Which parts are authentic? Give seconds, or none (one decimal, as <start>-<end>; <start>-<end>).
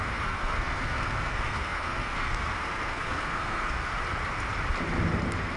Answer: 3.9-5.6